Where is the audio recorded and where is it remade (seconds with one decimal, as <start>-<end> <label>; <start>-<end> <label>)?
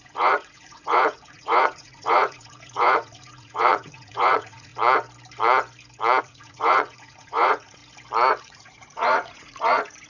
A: 0.0-4.7 remade; 4.7-6.2 recorded; 6.2-7.8 remade; 7.8-8.4 recorded; 8.4-10.1 remade